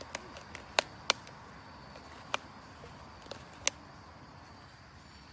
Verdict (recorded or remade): recorded